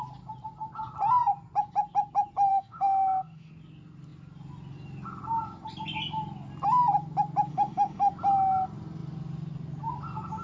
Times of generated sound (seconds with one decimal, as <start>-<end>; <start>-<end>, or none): 2.5-3.5; 7.5-8.1